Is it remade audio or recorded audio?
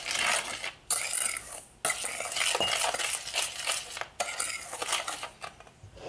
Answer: recorded